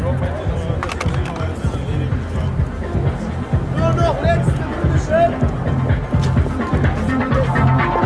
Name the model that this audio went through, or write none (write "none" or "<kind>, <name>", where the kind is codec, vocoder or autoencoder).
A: none